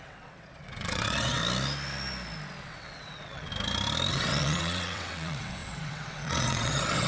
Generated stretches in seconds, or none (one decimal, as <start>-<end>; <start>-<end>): 0.0-1.4; 2.6-3.5; 4.1-7.1